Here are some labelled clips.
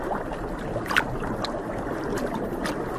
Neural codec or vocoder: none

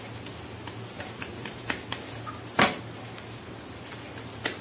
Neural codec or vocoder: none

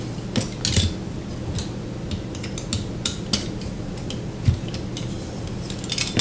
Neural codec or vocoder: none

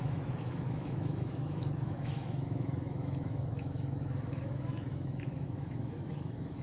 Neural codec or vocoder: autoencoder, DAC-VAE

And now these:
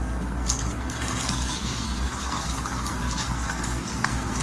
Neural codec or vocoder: codec, SNAC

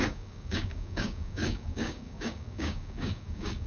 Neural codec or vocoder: codec, DAC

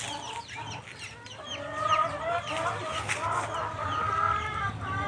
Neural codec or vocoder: none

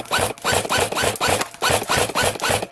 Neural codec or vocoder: none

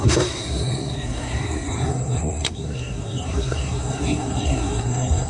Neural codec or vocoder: codec, SNAC